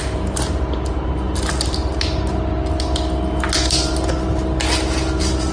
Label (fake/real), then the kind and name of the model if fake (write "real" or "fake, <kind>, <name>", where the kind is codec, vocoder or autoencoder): real